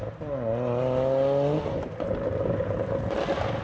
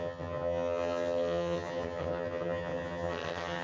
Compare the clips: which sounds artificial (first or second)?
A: second